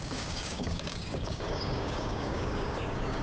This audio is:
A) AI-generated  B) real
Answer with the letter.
A